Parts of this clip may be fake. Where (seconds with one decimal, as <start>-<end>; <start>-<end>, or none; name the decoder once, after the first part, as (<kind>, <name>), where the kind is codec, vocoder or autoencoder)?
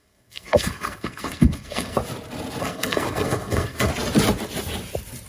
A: 0.0-2.0 (codec, SNAC); 2.6-3.9